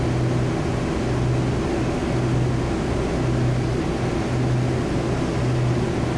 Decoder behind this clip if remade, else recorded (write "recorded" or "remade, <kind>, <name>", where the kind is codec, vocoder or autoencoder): recorded